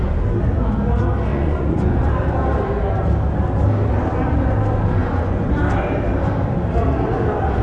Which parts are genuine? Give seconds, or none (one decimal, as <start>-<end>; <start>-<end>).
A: 0.0-1.3; 2.1-5.0; 5.6-7.6

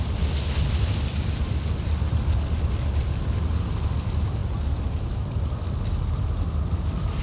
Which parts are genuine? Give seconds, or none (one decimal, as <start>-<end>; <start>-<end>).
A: 0.0-7.2

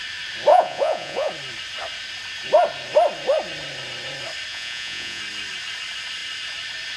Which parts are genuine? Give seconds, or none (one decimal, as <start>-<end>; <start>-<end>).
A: 0.0-0.5; 1.3-4.5; 5.2-7.0